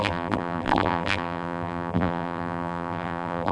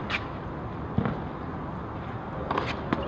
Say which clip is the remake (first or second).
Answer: first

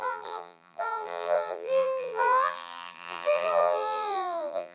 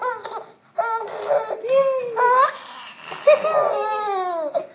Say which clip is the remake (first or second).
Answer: first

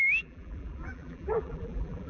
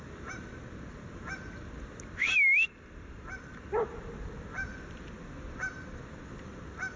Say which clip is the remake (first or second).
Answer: first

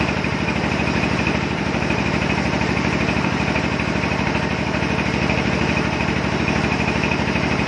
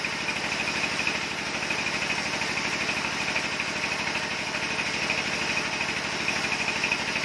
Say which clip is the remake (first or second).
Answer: first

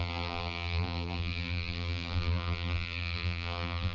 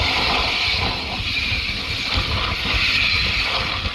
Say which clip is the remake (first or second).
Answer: first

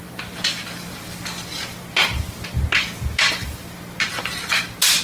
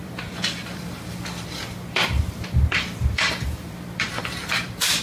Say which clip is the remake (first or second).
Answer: second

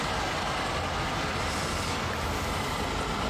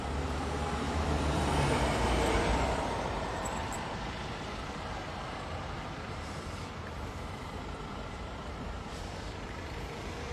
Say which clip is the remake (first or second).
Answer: second